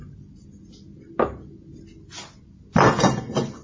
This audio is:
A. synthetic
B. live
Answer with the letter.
B